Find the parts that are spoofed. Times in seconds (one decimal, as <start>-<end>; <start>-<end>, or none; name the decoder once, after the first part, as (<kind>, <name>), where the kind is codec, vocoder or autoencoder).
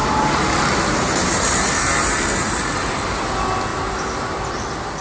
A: 0.0-2.9 (vocoder, BigVGAN v2); 3.7-4.6